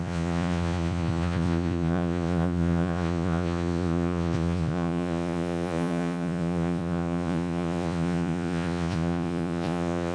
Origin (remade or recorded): remade